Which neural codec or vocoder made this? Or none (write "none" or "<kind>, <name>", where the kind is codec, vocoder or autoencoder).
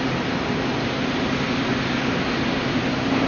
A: none